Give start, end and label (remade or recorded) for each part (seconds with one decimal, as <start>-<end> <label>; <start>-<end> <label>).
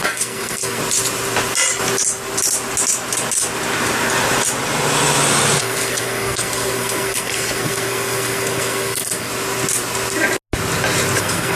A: 0.0-0.8 remade; 0.8-5.6 recorded; 5.6-9.3 remade; 9.3-11.2 recorded; 11.2-11.6 remade